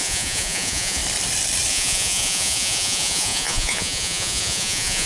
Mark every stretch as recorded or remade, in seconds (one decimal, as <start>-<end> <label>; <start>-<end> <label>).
0.0-1.0 remade; 1.0-1.7 recorded; 1.7-5.1 remade